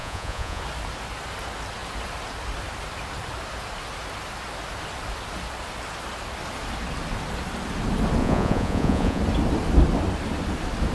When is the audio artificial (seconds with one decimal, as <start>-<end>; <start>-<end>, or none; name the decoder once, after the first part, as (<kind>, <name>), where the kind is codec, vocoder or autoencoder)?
0.0-0.6 (vocoder, Vocos); 8.2-9.2